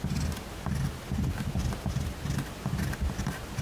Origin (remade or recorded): recorded